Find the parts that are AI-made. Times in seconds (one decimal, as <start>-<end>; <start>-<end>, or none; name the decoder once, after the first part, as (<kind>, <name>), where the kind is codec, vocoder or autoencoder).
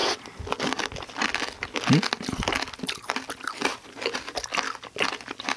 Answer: 3.4-4.5 (vocoder, BigVGAN v2)